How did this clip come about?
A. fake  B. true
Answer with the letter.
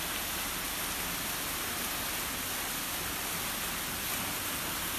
B